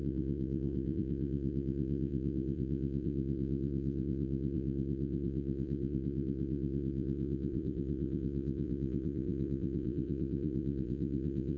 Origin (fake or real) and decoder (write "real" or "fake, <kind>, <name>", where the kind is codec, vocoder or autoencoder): fake, vocoder, Vocos